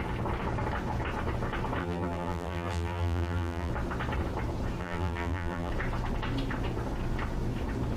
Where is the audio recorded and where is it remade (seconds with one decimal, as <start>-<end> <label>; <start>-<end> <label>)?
0.0-1.8 recorded; 1.8-3.7 remade; 3.7-4.8 recorded; 4.8-5.7 remade; 5.7-8.0 recorded